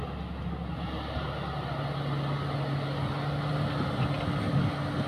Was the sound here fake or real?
real